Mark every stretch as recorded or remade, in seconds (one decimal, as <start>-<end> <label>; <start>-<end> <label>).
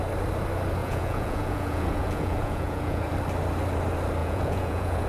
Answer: 0.0-0.8 recorded; 0.8-3.1 remade; 3.1-4.2 recorded; 4.2-5.1 remade